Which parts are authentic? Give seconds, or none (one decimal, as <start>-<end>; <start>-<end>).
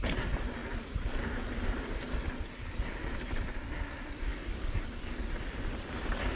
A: 0.0-4.3; 5.1-6.4